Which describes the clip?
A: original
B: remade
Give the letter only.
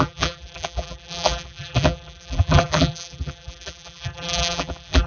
B